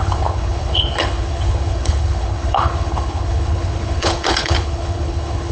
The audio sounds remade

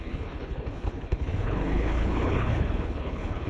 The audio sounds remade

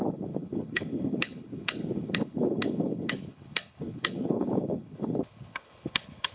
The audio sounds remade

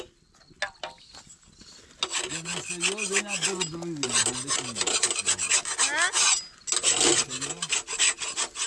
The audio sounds recorded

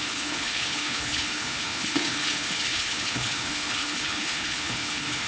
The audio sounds remade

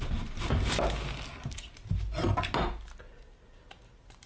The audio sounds recorded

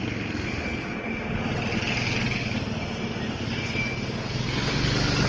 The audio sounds recorded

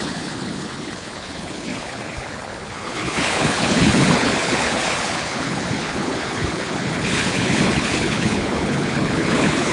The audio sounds remade